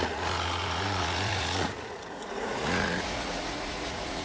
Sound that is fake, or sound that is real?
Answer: fake